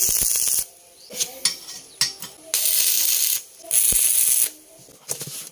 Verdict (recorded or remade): recorded